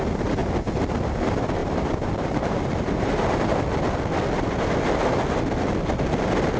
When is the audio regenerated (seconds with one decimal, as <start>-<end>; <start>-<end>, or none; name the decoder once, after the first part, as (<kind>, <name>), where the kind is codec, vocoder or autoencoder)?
1.6-3.6 (vocoder, BigVGAN v2)